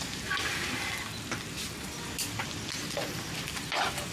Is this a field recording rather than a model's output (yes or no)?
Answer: yes